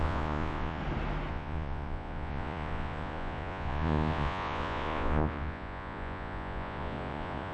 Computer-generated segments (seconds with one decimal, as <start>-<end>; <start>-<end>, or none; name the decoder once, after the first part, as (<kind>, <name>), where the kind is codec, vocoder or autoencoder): 0.0-0.8 (vocoder, Vocos); 1.3-7.5